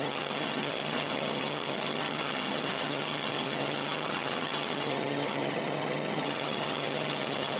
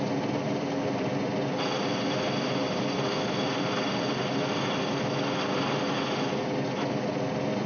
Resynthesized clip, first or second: first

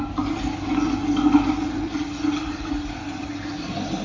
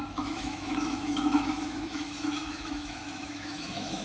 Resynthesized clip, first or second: second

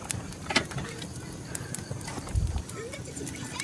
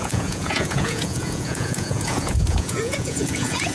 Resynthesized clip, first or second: second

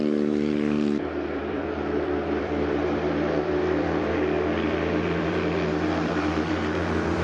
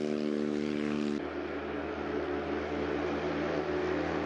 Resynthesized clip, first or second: first